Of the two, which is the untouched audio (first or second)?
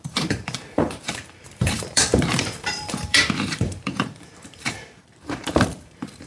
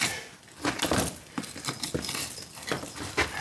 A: second